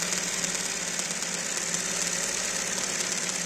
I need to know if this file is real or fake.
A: real